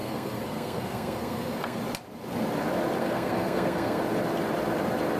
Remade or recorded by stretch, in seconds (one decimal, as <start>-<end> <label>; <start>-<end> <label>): 0.0-1.8 remade; 1.8-3.0 recorded; 3.0-4.0 remade; 4.0-5.2 recorded